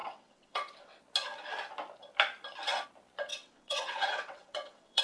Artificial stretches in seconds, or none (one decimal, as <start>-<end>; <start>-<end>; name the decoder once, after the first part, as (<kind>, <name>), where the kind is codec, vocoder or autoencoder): 0.0-1.0 (vocoder, WaveNeXt); 3.3-5.0